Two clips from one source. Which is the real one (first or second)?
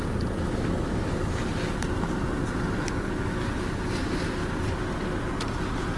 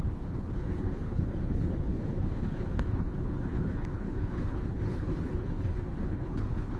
first